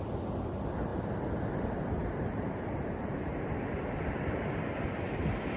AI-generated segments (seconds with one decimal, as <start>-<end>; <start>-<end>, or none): 2.0-3.5